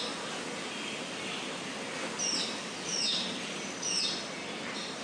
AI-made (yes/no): no